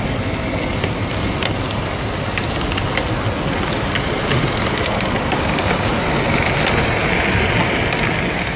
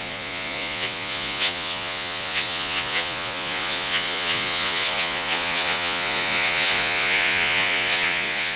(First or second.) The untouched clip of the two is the first